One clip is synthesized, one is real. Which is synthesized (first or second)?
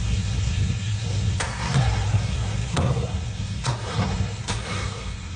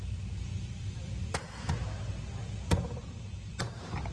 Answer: first